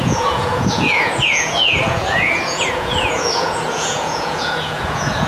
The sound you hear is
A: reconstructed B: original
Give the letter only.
A